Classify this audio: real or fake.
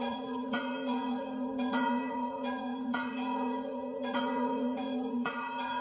fake